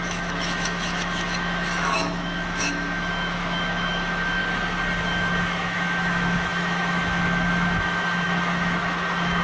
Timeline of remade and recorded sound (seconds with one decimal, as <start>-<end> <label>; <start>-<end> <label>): 0.0-4.4 remade; 4.4-5.0 recorded; 5.0-9.4 remade